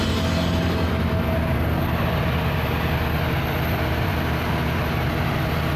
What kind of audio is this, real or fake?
real